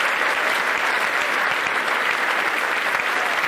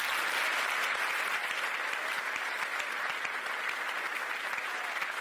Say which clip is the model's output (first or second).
first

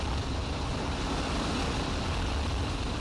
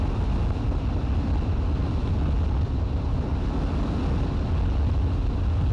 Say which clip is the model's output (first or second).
first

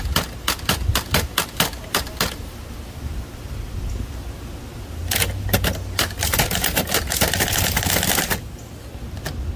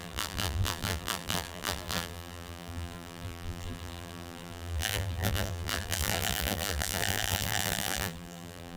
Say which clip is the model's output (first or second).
second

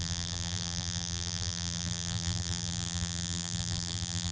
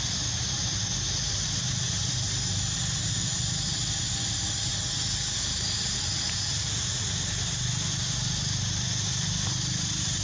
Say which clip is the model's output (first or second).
first